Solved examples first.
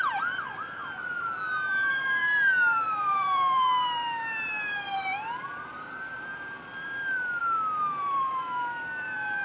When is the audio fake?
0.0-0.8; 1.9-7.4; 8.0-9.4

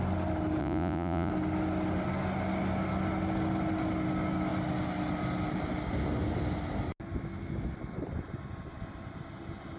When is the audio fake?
0.6-1.3

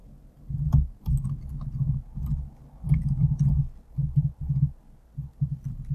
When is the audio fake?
none

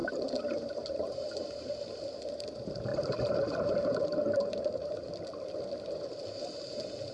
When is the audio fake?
0.0-1.7; 2.9-5.1

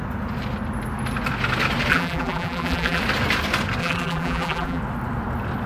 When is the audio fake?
1.9-3.0; 3.8-4.8

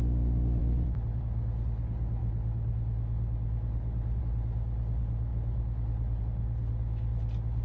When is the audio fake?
0.6-1.2

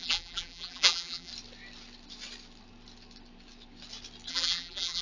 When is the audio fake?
0.0-1.3; 4.3-5.0